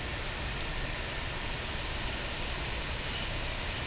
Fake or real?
real